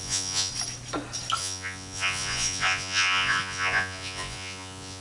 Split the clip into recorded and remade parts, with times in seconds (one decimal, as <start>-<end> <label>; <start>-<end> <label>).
0.0-0.5 remade; 0.5-1.4 recorded; 1.4-5.0 remade

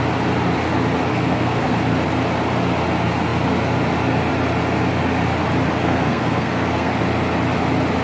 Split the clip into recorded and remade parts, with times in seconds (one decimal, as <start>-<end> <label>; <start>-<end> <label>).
0.0-1.1 recorded; 1.1-1.8 remade; 1.8-5.8 recorded; 5.8-7.0 remade; 7.0-8.0 recorded

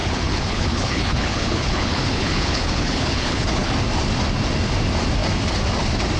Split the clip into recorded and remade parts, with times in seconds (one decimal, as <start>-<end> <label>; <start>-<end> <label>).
0.0-3.7 remade; 3.7-6.2 recorded

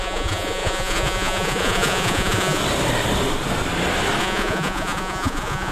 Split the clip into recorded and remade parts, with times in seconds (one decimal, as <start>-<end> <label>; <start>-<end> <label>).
0.0-2.6 remade; 2.6-4.2 recorded; 4.2-5.7 remade